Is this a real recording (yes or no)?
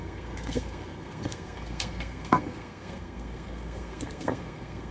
no